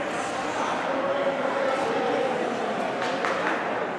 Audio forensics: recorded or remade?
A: recorded